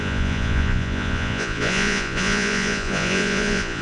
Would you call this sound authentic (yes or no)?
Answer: no